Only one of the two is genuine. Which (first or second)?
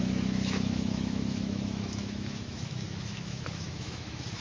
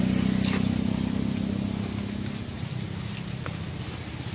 second